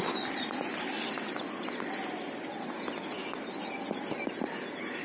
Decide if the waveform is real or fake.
real